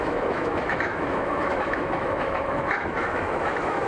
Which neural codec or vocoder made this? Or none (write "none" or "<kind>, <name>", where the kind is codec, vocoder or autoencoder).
autoencoder, DAC-VAE